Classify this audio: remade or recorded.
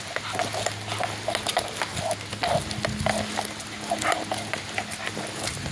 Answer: recorded